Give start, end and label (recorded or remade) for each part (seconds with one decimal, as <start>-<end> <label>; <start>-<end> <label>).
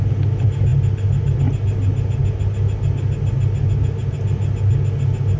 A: 0.0-5.4 recorded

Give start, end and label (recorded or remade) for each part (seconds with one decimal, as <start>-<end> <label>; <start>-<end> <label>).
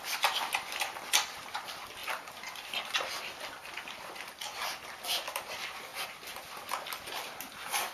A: 0.0-7.9 recorded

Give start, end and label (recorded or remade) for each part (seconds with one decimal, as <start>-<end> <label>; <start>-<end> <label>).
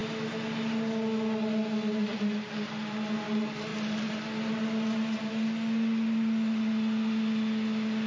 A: 0.0-8.1 recorded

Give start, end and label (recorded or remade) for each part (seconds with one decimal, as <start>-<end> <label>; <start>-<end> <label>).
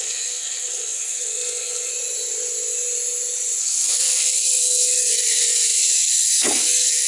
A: 0.0-1.9 remade; 1.9-3.6 recorded; 3.6-7.1 remade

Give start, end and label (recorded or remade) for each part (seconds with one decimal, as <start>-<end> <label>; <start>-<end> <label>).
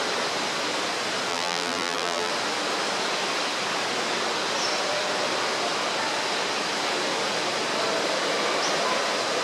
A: 0.0-1.3 recorded; 1.3-2.3 remade; 2.3-9.4 recorded